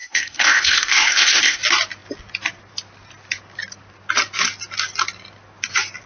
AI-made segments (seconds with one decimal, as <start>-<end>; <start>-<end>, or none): 0.0-1.6